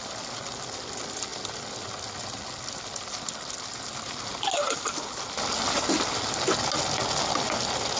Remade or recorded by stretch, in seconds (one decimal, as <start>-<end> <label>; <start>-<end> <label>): 0.0-8.0 recorded